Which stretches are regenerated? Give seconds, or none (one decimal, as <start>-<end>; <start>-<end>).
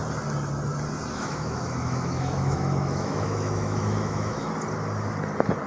1.1-4.5